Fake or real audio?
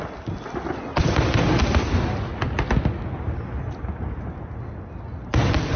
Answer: real